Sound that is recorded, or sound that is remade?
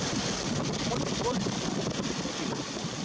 recorded